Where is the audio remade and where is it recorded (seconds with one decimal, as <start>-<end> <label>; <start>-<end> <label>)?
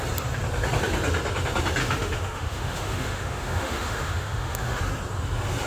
0.0-1.8 recorded; 1.8-4.8 remade; 4.8-5.7 recorded